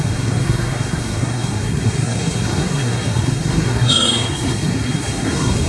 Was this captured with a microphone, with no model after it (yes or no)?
no